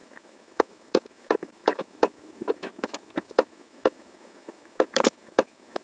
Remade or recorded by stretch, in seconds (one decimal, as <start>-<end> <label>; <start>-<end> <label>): 0.0-5.8 remade